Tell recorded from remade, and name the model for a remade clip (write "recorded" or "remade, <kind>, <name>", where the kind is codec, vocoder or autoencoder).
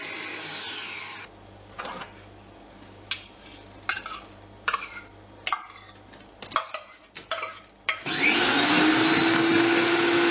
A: recorded